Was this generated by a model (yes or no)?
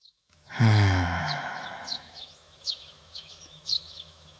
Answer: yes